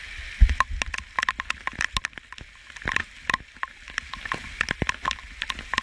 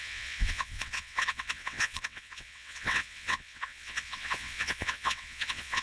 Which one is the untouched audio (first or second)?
first